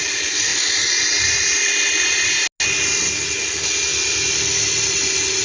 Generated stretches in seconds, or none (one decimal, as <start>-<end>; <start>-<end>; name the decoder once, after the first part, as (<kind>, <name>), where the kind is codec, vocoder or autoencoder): none